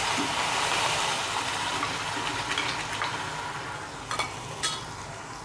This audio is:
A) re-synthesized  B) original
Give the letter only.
B